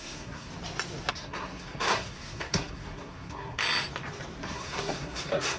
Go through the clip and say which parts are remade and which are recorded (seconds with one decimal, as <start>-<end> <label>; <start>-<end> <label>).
0.0-0.5 remade; 0.5-1.1 recorded; 1.1-3.6 remade; 3.6-4.4 recorded; 4.4-5.6 remade